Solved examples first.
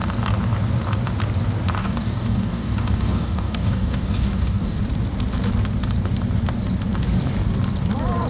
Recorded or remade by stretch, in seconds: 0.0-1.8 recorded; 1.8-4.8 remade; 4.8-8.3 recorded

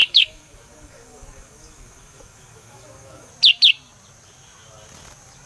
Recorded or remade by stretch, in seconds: 0.0-3.3 remade; 3.3-5.5 recorded